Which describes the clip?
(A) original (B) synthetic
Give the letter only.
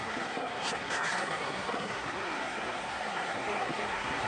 B